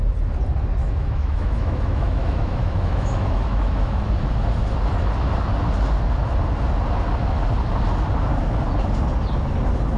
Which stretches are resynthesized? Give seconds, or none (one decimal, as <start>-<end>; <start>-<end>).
0.8-4.1